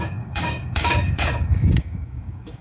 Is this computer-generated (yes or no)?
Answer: yes